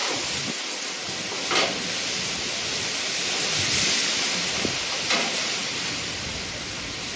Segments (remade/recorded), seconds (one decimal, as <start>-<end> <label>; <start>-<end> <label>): 0.0-7.2 recorded